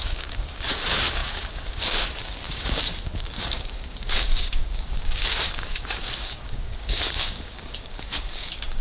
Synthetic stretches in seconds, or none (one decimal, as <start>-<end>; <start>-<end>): 0.0-8.8